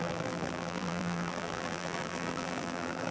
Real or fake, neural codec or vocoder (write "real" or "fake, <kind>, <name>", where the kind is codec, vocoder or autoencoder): fake, vocoder, BigVGAN v2